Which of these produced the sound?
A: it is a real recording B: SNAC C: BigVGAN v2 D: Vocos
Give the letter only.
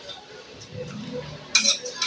A